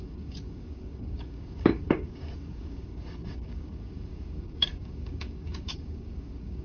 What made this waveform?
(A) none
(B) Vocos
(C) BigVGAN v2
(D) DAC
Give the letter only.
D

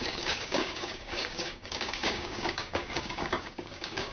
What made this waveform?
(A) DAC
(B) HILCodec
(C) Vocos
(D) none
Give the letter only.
A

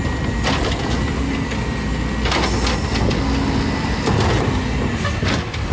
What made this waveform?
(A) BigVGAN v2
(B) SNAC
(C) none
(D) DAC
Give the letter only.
C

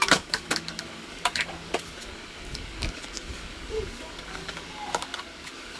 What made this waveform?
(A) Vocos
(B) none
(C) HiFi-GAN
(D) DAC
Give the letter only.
D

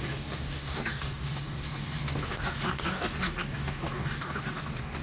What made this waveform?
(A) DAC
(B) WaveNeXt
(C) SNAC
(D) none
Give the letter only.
A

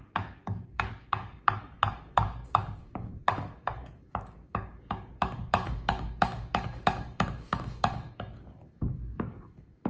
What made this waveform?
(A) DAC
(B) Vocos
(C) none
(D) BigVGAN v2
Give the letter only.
A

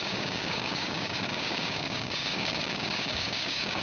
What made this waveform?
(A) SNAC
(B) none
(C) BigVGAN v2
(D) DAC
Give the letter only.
D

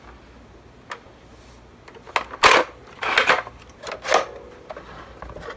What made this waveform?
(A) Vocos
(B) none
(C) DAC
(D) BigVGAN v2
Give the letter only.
B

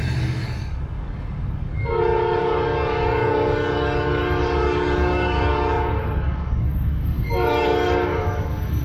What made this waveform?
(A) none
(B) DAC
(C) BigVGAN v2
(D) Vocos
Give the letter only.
B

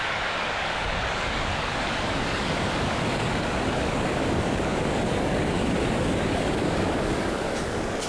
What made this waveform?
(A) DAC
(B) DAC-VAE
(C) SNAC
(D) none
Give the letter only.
A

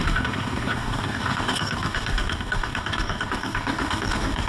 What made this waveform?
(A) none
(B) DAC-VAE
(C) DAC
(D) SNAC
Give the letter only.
C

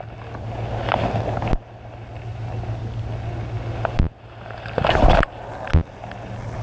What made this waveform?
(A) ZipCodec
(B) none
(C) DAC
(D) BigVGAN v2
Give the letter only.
B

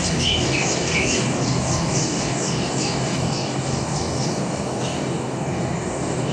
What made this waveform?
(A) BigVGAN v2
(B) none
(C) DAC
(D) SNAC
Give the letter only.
C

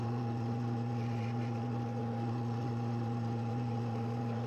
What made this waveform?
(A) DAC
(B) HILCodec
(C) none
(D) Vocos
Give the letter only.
C